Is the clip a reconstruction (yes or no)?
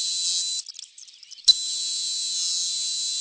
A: no